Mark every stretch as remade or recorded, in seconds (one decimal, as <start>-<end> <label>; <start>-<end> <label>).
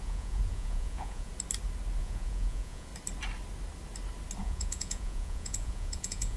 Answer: 0.0-1.3 remade; 1.3-2.0 recorded; 2.0-2.9 remade; 2.9-4.4 recorded; 4.4-6.4 remade